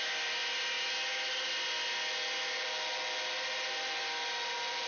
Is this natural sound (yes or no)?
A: yes